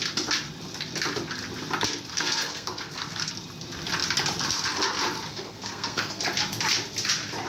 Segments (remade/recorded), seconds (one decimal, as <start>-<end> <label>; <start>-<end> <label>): 0.0-2.1 recorded; 2.1-3.3 remade; 3.3-5.3 recorded; 5.3-6.2 remade; 6.2-7.5 recorded